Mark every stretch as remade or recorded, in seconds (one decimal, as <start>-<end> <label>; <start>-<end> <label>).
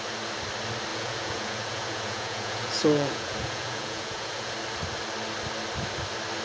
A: 0.0-0.9 recorded; 0.9-4.5 remade; 4.5-6.4 recorded